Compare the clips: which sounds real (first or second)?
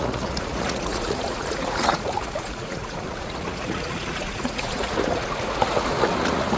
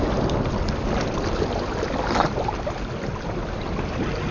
second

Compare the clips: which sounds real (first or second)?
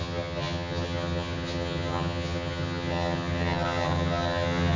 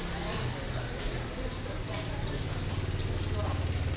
second